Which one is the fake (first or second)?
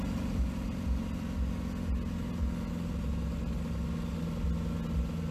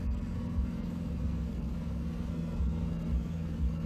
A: second